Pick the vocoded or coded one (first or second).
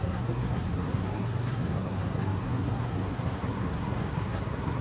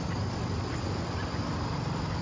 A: first